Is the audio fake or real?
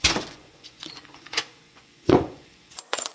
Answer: fake